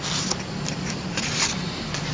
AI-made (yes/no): no